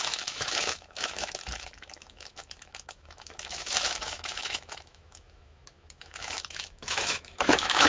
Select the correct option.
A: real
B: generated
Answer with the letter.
B